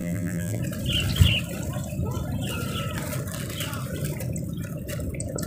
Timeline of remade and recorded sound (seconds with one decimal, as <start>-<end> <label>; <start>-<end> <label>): 0.0-0.6 remade; 0.6-5.5 recorded

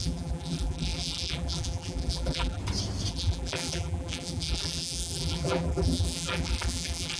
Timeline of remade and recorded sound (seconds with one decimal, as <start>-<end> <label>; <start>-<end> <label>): 0.0-2.6 remade; 2.6-3.1 recorded; 3.1-7.2 remade